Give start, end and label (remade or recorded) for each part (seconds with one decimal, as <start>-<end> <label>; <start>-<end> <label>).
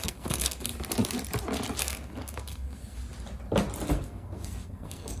0.0-0.7 remade; 0.7-1.8 recorded; 1.8-3.0 remade; 3.0-3.9 recorded; 3.9-5.2 remade